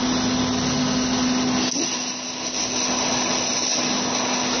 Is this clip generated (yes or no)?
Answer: no